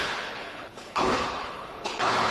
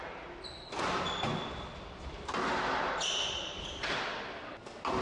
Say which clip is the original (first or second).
second